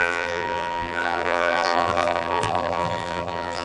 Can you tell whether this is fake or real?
fake